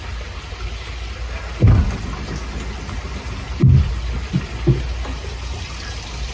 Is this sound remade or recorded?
recorded